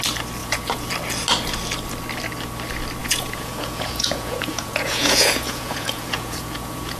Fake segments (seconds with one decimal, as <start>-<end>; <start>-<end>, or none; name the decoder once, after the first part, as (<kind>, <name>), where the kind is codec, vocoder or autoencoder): 0.4-0.9 (vocoder, Vocos); 3.0-7.0